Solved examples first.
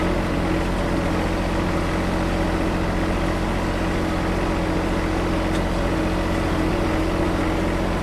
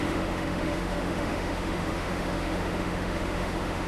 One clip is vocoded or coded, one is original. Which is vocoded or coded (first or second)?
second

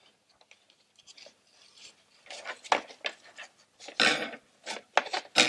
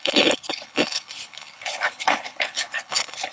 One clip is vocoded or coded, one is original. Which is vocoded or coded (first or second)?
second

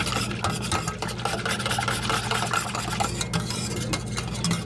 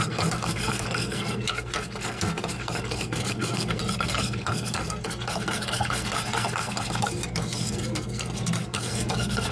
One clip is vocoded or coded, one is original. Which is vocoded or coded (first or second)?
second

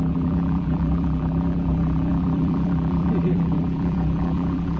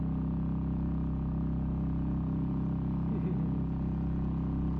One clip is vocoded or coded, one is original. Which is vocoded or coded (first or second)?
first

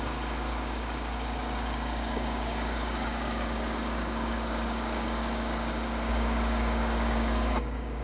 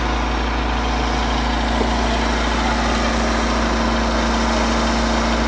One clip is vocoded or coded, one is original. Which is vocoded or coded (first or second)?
first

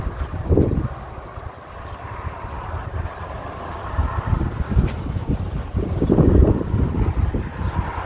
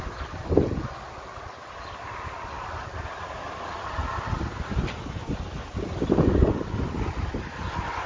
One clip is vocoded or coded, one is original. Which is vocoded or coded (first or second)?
first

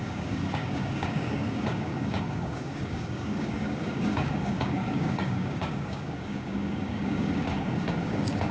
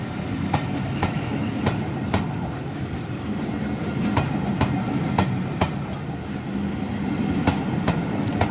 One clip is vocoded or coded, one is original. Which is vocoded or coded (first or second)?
first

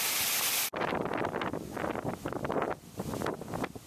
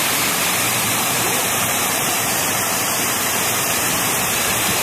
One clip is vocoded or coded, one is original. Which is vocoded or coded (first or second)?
second